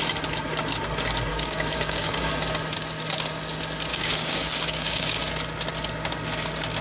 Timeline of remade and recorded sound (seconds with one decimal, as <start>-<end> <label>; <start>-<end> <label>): 0.0-1.3 recorded; 1.3-2.3 remade; 2.3-3.9 recorded; 3.9-5.2 remade; 5.2-6.8 recorded